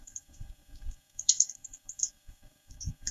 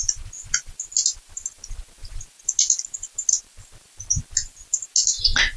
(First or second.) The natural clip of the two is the second